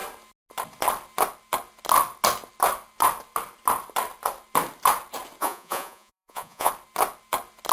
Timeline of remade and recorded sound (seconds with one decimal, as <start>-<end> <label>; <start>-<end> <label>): 0.0-5.4 recorded; 5.4-6.7 remade; 6.7-7.7 recorded